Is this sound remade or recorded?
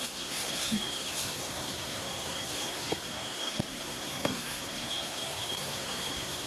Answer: remade